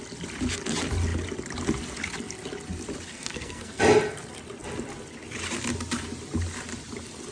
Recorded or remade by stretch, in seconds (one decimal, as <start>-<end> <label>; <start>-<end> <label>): 0.0-3.1 recorded; 3.1-3.8 remade; 3.8-7.3 recorded